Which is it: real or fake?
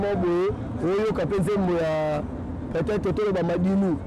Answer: real